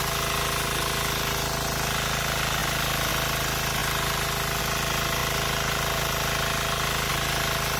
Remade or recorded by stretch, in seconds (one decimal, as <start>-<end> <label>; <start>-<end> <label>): 0.0-7.8 recorded